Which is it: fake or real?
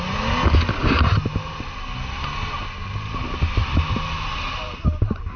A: real